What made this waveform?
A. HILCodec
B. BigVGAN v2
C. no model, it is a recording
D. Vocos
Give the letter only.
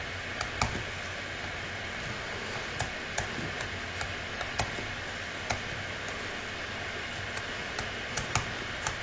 C